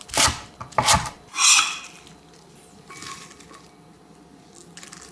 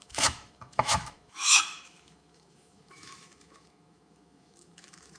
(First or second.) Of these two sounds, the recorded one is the first